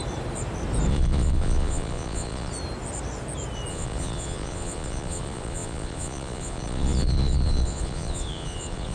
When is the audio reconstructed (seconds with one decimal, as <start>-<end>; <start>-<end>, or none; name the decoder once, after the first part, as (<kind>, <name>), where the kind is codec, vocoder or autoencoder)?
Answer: 0.9-2.5 (vocoder, Vocos); 3.7-8.9